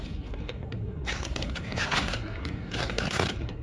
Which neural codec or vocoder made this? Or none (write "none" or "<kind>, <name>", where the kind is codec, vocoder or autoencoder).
codec, SNAC